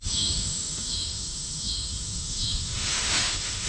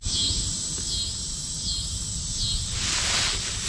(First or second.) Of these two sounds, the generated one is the first